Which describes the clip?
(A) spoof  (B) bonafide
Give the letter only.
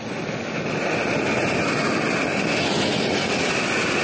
B